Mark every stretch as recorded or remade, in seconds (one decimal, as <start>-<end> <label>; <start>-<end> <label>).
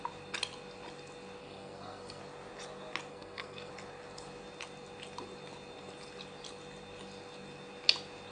0.0-1.4 recorded; 1.4-2.2 remade; 2.2-3.1 recorded; 3.1-3.7 remade; 3.7-8.3 recorded